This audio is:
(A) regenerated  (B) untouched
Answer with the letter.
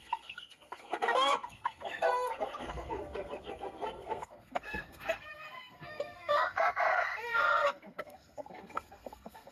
A